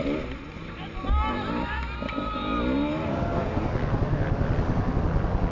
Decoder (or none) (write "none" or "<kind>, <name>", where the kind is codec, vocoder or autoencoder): none